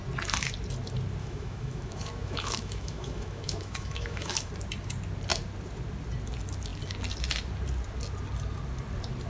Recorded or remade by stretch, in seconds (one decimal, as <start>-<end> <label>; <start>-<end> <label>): 0.0-1.2 recorded; 1.2-4.5 remade; 4.5-9.3 recorded